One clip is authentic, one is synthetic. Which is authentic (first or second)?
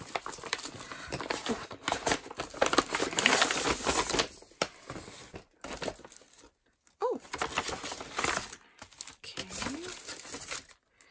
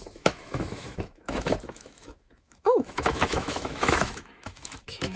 first